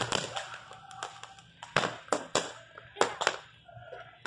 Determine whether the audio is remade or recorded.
recorded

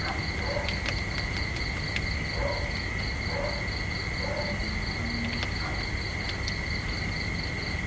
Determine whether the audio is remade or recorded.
recorded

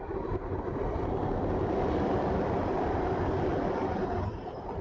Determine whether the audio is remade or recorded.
recorded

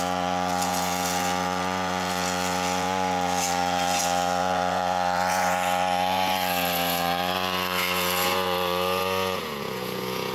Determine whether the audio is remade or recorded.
remade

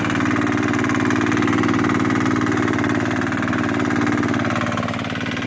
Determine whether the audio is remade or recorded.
recorded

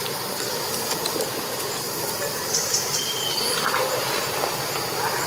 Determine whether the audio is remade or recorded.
recorded